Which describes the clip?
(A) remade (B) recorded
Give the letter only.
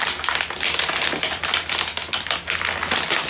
B